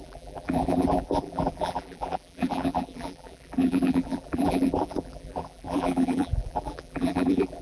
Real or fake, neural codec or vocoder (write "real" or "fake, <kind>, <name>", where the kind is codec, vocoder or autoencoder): fake, vocoder, BigVGAN v2